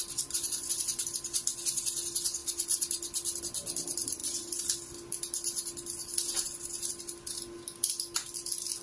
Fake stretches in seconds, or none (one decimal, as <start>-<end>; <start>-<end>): none